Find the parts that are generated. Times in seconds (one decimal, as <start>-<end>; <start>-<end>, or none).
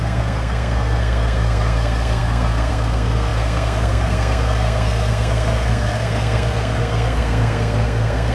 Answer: 0.0-8.3